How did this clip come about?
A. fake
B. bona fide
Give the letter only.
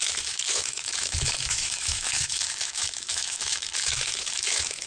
A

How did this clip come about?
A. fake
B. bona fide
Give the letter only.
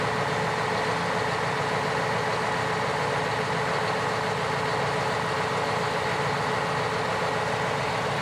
B